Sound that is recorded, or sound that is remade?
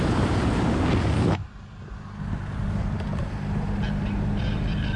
recorded